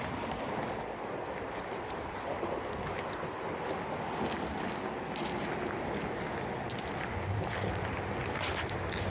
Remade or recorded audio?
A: recorded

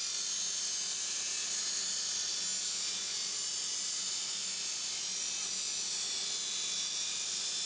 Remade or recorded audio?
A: recorded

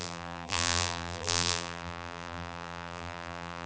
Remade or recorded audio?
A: remade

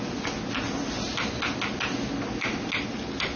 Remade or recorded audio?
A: recorded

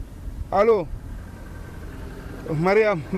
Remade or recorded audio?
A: remade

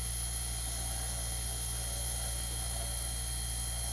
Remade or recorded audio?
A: recorded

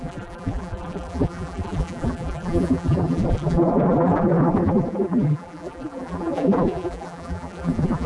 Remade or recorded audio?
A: remade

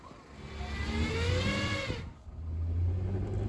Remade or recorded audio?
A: recorded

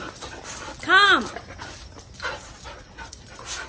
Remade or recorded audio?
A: recorded